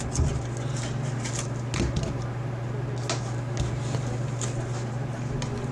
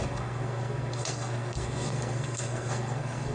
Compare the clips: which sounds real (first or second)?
first